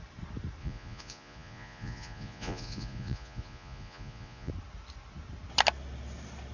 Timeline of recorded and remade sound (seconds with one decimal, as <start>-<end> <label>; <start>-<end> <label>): 0.0-0.6 recorded; 0.6-4.5 remade; 4.5-6.5 recorded